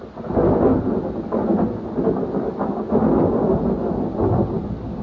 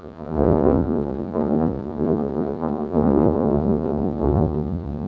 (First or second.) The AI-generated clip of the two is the second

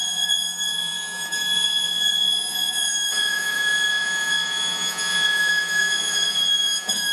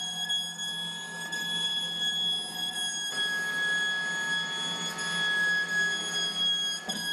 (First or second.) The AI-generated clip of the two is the first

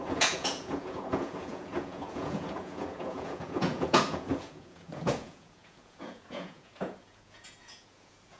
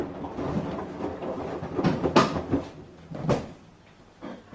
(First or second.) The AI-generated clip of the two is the first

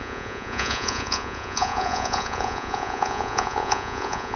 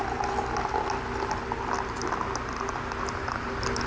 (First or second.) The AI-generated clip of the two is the first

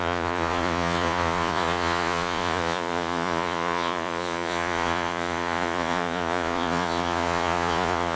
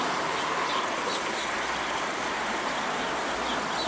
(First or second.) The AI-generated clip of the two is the first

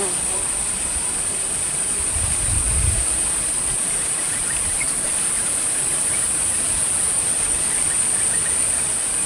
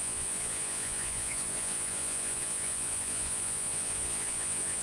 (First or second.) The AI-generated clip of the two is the second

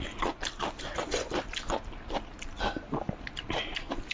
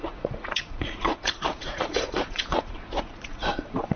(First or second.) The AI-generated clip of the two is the second